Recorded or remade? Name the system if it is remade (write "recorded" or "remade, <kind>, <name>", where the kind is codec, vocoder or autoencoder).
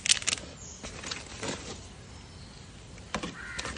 recorded